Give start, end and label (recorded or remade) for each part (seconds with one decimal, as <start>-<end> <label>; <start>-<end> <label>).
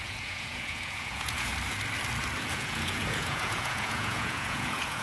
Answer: 0.0-1.5 remade; 1.5-2.4 recorded; 2.4-5.0 remade